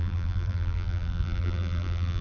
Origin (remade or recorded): remade